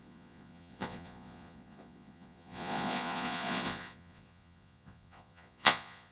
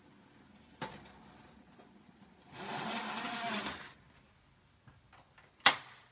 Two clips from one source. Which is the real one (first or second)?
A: second